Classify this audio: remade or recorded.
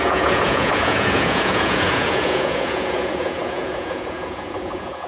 remade